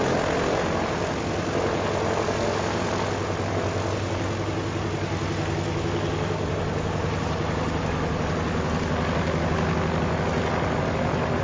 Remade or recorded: recorded